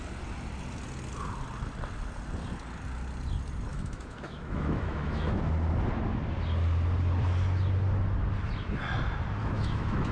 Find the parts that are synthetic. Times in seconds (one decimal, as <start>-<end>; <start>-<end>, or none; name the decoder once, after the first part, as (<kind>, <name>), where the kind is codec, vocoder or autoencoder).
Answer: 3.7-5.4 (autoencoder, DAC-VAE); 9.4-10.1